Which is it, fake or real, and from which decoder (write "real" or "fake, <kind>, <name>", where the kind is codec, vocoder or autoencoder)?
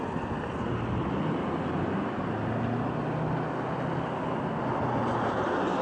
real